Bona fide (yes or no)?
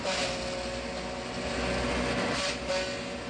yes